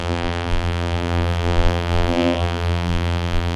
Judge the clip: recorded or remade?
remade